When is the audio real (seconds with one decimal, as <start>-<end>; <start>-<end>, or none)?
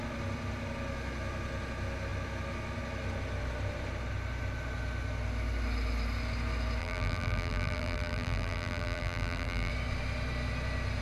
0.0-6.8; 9.7-11.0